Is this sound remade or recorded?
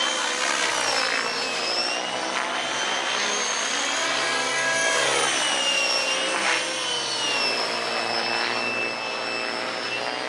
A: recorded